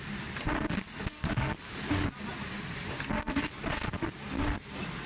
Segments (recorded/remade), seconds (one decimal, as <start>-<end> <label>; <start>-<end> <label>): 0.0-1.1 recorded; 1.1-1.9 remade; 1.9-5.1 recorded

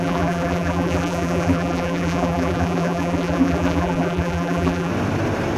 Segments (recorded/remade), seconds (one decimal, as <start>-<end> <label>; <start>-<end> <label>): 0.0-4.9 remade; 4.9-5.6 recorded

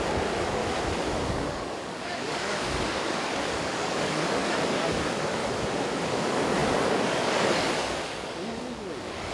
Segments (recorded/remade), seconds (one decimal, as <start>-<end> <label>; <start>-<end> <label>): 0.0-0.6 remade; 0.6-1.2 recorded; 1.2-5.4 remade; 5.4-6.1 recorded; 6.1-9.3 remade

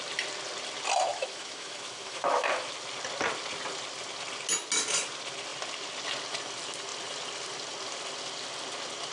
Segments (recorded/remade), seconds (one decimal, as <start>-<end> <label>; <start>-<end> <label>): 0.0-1.1 recorded; 1.1-2.7 remade; 2.7-9.1 recorded

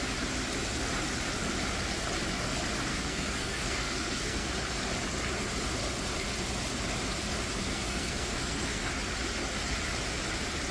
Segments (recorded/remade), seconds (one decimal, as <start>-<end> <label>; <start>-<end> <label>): 0.0-2.9 recorded; 2.9-4.5 remade; 4.5-7.7 recorded; 7.7-8.9 remade; 8.9-10.7 recorded

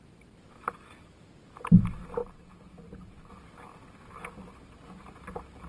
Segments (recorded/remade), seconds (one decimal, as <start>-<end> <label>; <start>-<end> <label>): 0.0-2.2 recorded; 2.2-3.3 remade; 3.3-5.7 recorded

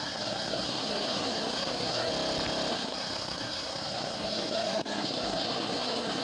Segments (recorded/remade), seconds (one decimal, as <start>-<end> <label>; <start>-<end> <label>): 0.0-2.1 remade; 2.1-2.7 recorded; 2.7-6.2 remade